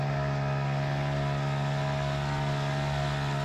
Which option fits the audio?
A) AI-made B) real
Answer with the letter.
B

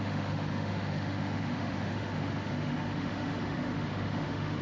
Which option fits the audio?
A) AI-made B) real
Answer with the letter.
A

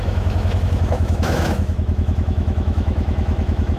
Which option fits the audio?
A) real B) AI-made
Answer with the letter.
B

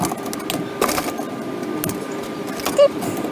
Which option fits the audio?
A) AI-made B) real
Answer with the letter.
B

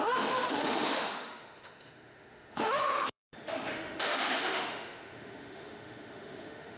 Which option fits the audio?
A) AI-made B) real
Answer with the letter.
A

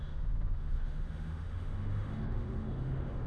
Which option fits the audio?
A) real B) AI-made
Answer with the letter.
B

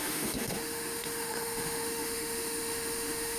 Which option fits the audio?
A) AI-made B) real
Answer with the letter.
A